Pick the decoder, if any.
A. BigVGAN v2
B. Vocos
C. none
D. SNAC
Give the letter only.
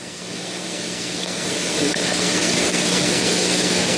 D